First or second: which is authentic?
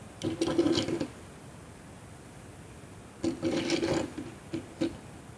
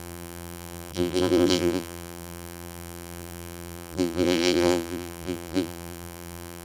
first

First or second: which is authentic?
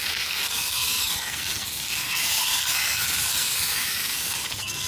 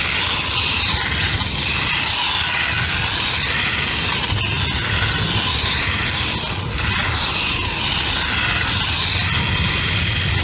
second